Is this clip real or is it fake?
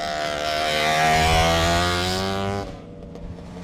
real